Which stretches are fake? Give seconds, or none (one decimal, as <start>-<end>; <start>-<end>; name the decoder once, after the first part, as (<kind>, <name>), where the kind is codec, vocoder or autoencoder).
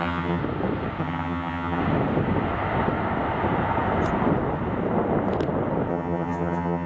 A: 0.0-0.4 (vocoder, HiFi-GAN); 1.0-1.8; 5.9-6.9